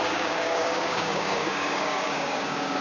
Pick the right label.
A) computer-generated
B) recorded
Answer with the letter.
A